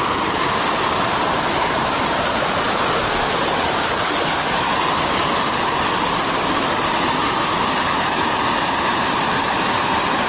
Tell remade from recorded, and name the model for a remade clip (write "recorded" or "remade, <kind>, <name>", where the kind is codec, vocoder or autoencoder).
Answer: recorded